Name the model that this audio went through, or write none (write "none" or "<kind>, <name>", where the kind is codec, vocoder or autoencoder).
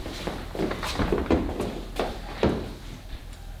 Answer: none